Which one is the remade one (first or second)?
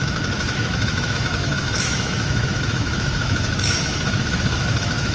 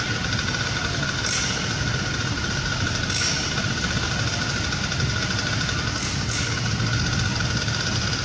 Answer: first